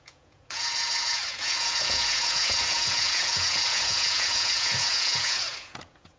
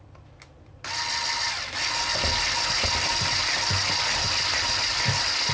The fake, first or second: first